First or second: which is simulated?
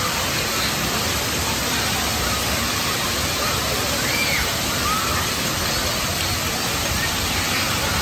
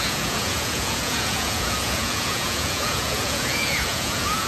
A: second